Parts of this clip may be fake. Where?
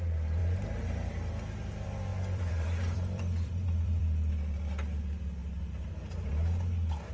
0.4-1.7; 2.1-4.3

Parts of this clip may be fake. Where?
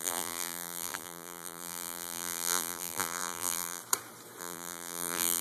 0.0-3.8; 4.4-5.4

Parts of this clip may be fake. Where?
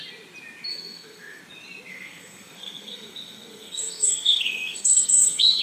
0.7-1.4; 1.9-5.6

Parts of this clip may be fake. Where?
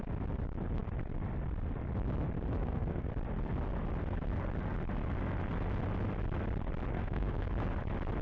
2.6-3.1; 6.9-7.5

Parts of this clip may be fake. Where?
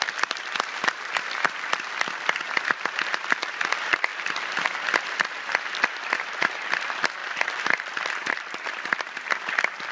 none